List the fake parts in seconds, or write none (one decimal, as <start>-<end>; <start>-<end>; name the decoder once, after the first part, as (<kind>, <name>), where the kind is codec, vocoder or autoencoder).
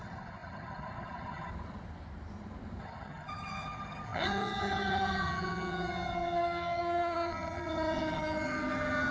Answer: 0.0-1.5 (vocoder, HiFi-GAN); 2.8-9.1